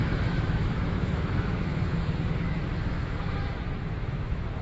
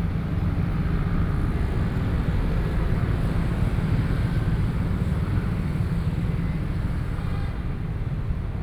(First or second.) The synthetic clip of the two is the first